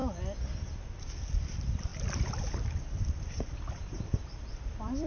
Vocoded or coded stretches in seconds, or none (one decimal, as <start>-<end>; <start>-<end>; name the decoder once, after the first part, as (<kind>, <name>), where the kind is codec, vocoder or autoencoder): 1.9-5.1 (vocoder, BigVGAN v2)